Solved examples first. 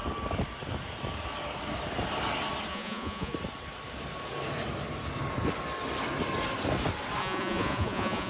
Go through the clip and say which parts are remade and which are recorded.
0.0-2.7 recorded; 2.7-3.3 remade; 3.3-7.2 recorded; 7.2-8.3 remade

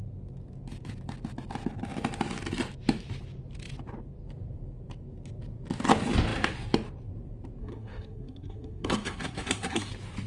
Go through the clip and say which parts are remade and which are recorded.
0.0-7.6 recorded; 7.6-9.9 remade; 9.9-10.3 recorded

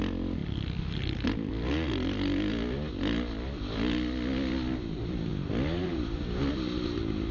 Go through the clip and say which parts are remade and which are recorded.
0.0-0.4 recorded; 0.4-1.5 remade; 1.5-5.3 recorded; 5.3-6.5 remade; 6.5-7.3 recorded

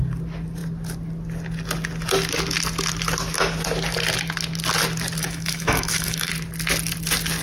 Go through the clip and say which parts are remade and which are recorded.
0.0-5.2 recorded; 5.2-6.3 remade; 6.3-7.4 recorded